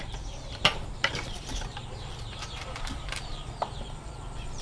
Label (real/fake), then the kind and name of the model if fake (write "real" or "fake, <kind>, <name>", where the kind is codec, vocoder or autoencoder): fake, vocoder, BigVGAN v2